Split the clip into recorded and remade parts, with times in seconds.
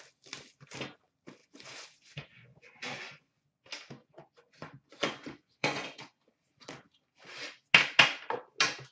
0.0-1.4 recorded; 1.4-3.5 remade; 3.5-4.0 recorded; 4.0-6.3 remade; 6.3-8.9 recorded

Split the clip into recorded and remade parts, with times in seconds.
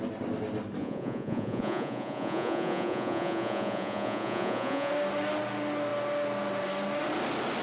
0.0-0.8 recorded; 0.8-4.9 remade; 4.9-7.6 recorded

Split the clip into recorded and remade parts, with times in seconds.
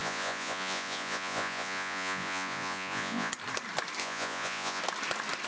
0.0-3.3 remade; 3.3-4.0 recorded; 4.0-4.8 remade; 4.8-5.5 recorded